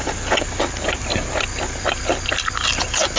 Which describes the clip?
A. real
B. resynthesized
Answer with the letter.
A